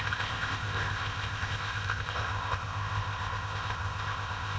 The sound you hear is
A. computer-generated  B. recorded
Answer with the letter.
A